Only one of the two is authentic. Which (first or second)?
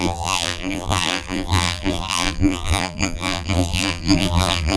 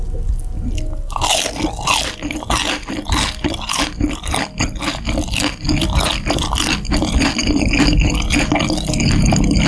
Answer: second